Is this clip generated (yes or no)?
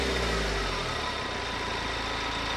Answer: no